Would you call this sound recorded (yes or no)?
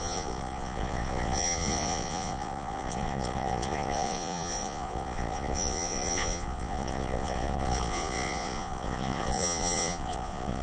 no